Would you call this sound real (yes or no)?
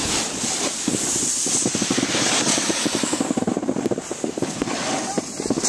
yes